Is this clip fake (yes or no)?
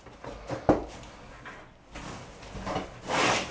no